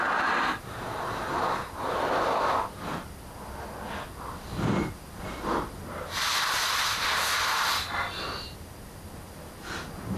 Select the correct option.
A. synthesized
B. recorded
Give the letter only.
B